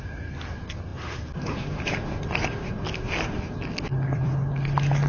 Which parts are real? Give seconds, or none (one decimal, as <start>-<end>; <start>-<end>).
0.0-3.9; 4.5-5.1